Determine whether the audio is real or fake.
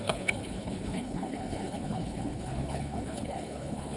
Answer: fake